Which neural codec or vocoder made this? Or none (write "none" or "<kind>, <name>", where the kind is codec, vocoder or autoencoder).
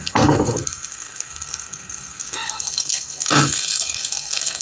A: codec, SNAC